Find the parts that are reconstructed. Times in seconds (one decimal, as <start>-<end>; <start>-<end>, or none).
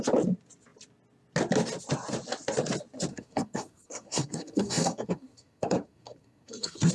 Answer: 3.1-6.9